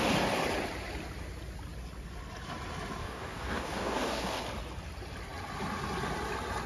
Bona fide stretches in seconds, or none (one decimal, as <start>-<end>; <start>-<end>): 0.0-3.0; 4.4-6.7